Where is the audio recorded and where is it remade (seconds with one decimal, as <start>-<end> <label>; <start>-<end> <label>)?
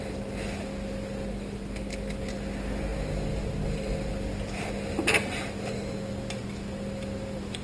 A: 0.0-7.6 recorded